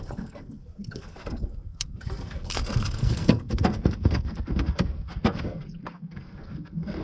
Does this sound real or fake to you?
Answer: fake